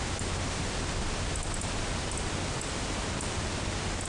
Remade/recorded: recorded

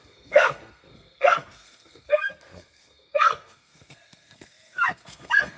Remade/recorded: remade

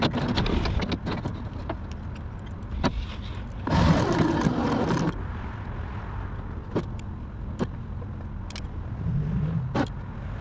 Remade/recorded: recorded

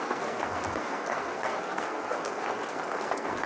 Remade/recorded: remade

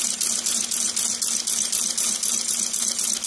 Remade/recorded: recorded